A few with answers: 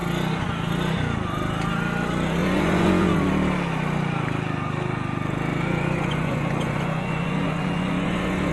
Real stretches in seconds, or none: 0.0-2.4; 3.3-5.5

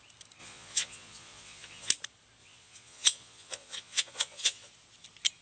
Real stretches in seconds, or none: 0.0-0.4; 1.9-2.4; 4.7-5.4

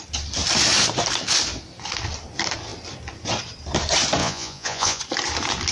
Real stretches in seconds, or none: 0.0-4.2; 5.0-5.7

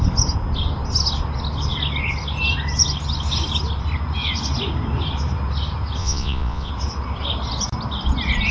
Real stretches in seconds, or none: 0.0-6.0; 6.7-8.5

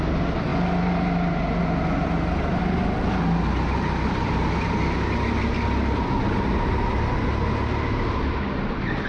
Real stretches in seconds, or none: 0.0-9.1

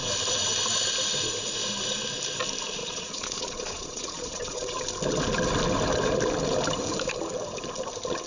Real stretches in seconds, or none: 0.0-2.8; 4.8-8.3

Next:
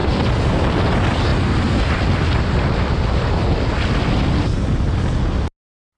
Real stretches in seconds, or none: 0.0-6.0